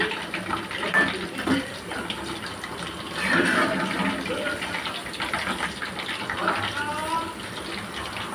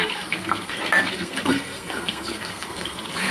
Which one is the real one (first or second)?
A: first